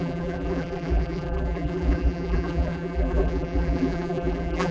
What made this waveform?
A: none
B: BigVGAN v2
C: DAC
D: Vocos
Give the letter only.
B